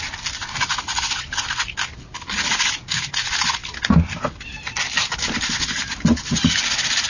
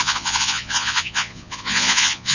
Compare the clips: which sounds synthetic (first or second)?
second